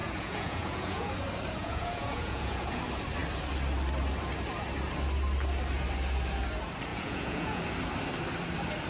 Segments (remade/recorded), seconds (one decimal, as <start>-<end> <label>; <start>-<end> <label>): 0.0-1.1 remade; 1.1-1.6 recorded; 1.6-2.8 remade; 2.8-6.9 recorded; 6.9-7.6 remade; 7.6-8.9 recorded